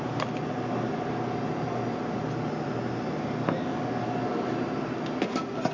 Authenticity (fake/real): real